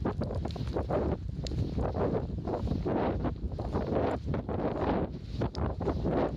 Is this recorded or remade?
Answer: recorded